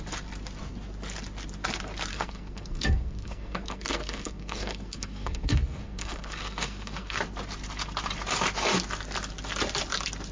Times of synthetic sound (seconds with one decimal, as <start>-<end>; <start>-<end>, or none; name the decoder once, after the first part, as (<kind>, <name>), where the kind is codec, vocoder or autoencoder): 2.1-7.2 (codec, SNAC)